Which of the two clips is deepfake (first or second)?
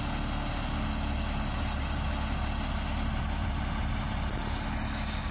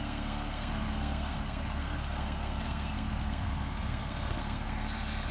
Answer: second